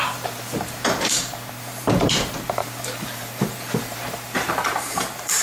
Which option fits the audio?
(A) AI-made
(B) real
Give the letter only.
A